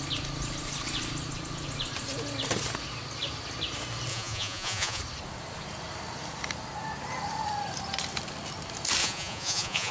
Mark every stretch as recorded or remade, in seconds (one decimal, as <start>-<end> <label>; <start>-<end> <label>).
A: 0.0-4.1 recorded; 4.1-5.0 remade; 5.0-9.0 recorded; 9.0-9.9 remade